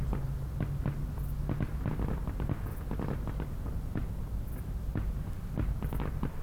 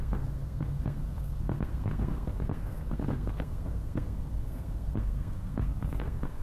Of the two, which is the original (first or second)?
first